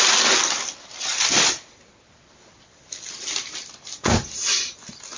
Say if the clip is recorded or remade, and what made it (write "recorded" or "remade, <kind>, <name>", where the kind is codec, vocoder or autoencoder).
recorded